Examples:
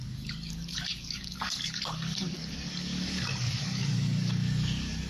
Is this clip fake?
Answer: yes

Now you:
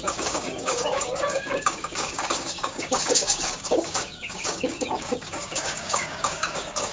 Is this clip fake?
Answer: yes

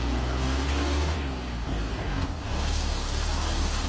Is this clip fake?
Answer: yes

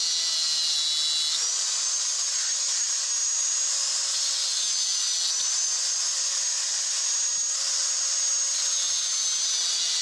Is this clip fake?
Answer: no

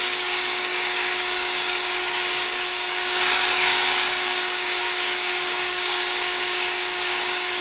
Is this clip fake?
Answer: yes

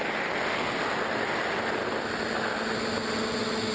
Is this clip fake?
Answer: no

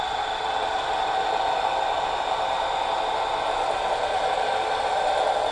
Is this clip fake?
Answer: no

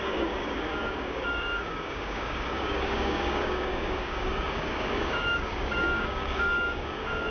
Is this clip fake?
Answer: yes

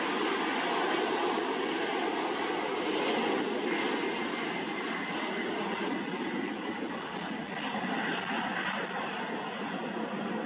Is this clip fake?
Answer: no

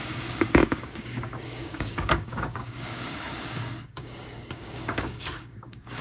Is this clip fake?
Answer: yes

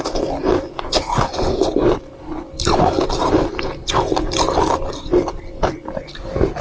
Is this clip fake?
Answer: no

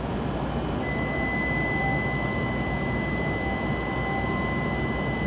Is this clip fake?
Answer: no